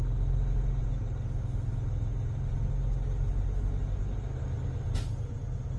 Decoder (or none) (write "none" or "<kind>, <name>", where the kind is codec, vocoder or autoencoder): none